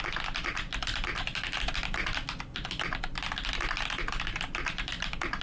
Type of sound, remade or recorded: recorded